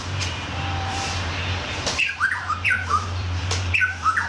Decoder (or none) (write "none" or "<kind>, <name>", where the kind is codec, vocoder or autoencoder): vocoder, BigVGAN v2